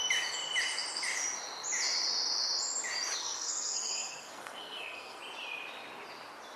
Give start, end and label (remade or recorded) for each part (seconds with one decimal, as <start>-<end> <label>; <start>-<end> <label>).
0.0-3.2 recorded; 3.2-5.2 remade; 5.2-6.6 recorded